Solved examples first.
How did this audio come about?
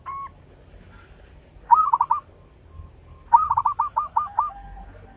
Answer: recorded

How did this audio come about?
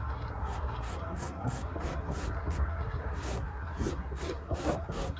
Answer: remade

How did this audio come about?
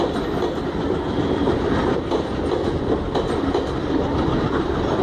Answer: recorded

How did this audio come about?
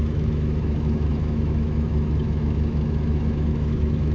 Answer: remade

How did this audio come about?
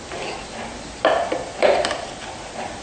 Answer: recorded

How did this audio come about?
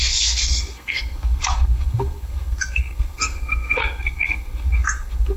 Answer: remade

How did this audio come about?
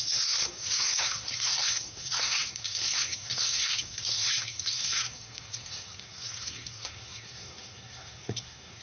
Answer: remade